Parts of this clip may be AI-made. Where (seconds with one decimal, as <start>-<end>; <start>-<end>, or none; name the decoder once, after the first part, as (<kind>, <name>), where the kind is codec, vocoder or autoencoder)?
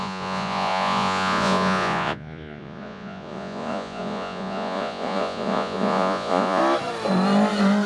0.0-6.6 (vocoder, Vocos)